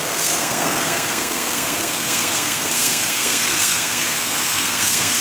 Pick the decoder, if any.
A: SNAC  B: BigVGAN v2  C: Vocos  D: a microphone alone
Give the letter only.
A